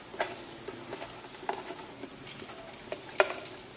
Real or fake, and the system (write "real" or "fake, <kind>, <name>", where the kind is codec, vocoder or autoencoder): real